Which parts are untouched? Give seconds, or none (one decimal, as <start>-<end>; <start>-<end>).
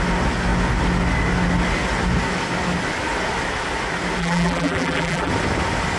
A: 0.0-4.2; 5.3-6.0